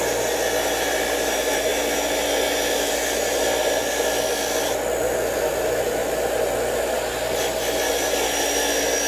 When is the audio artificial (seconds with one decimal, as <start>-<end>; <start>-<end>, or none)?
none